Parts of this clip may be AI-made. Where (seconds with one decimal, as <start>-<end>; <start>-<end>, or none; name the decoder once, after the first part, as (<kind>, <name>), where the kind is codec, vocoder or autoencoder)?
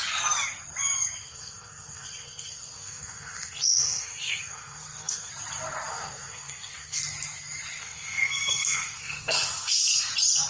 1.2-5.3 (codec, SNAC); 5.9-7.0; 7.8-10.1